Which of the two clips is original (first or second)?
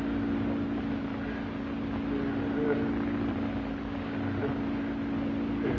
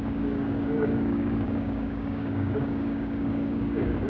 first